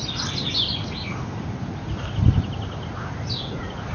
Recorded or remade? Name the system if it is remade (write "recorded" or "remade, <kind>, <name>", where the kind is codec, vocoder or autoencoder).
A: recorded